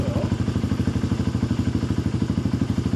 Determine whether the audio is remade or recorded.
recorded